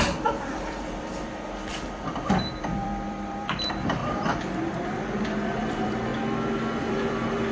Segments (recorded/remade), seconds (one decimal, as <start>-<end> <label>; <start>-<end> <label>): 0.0-6.1 remade; 6.1-6.8 recorded; 6.8-7.5 remade